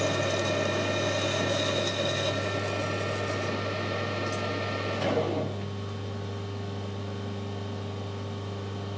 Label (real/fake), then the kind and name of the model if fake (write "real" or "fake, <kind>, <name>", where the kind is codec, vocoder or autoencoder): real